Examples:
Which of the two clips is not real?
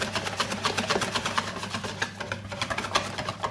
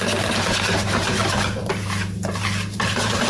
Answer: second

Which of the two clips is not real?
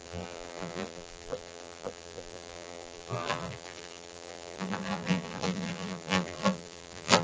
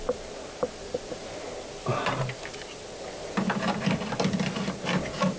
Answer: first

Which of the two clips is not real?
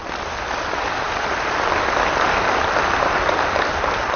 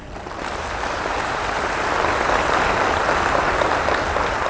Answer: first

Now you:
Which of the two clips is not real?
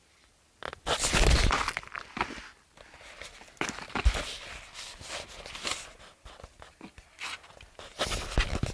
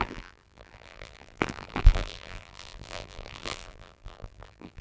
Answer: second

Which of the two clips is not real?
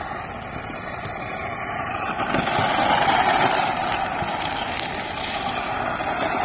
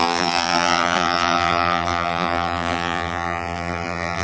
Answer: second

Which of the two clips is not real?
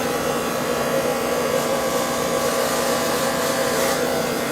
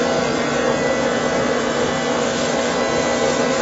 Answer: first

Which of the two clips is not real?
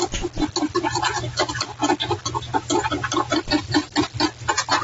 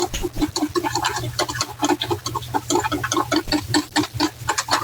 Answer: second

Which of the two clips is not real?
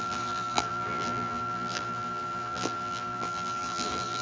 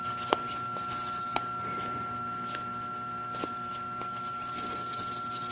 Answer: first